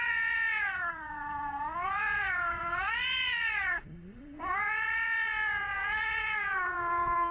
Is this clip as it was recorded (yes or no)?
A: no